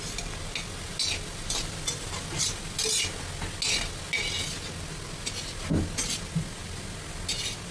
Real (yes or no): yes